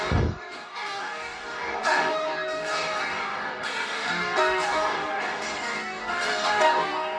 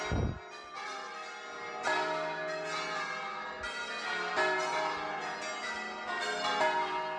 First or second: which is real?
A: second